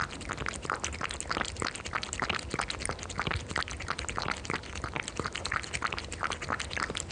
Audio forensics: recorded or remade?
recorded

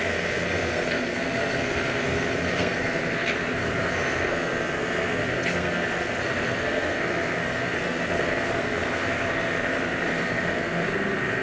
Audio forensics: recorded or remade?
remade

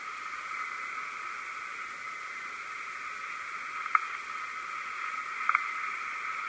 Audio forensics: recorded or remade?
recorded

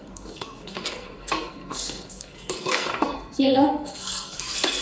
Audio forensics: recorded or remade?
remade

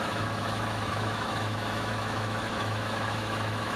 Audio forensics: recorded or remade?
remade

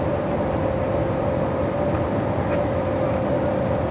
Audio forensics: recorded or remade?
recorded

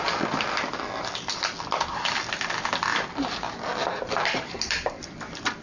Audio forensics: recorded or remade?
remade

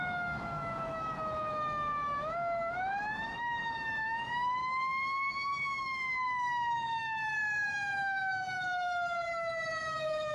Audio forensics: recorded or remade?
remade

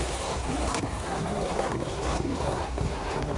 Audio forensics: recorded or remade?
remade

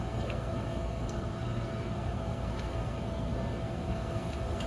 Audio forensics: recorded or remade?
remade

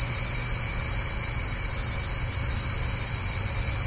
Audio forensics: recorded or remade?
recorded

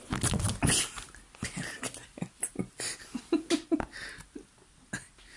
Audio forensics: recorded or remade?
recorded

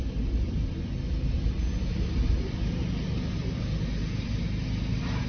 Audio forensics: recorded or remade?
recorded